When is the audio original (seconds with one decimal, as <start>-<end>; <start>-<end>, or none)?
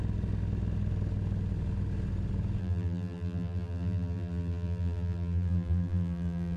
0.0-2.6